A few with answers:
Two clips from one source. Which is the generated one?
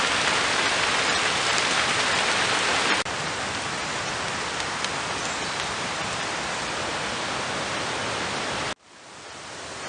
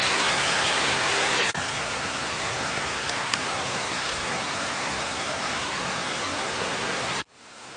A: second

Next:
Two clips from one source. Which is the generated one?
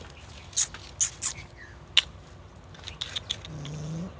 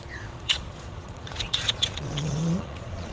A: second